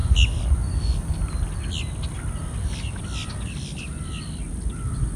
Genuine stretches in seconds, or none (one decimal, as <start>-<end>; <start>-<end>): 0.0-5.2